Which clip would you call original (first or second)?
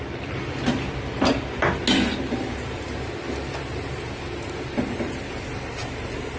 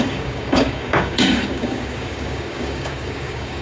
first